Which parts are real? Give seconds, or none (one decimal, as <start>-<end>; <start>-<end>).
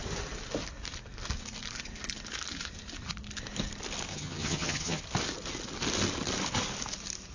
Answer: 0.0-4.1; 5.0-7.3